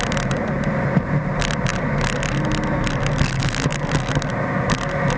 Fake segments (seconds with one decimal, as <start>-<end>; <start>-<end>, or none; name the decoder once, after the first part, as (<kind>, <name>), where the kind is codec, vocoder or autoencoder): none